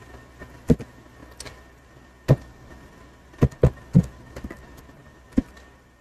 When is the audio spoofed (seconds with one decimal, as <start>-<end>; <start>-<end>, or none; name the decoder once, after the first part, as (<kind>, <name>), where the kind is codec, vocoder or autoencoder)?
none